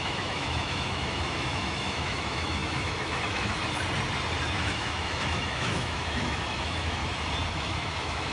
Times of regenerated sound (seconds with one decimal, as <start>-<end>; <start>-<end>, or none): 0.0-3.6; 4.5-7.0; 7.5-8.3